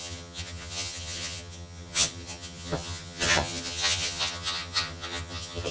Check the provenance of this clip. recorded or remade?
remade